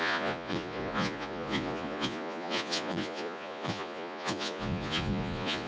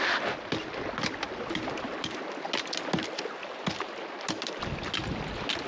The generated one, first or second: first